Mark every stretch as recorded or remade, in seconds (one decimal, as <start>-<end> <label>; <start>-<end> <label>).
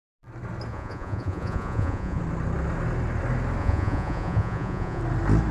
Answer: 0.0-0.7 recorded; 0.7-2.2 remade; 2.2-3.6 recorded; 3.6-5.0 remade; 5.0-5.5 recorded